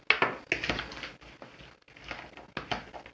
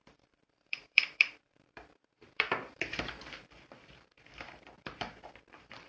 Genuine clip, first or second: first